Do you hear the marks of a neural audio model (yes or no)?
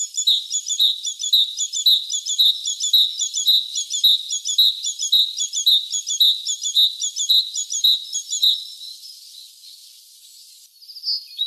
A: no